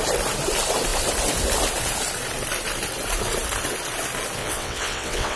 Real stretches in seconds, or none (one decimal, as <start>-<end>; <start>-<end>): 0.0-4.4